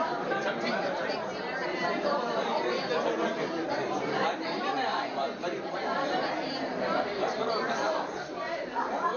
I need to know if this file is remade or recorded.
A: remade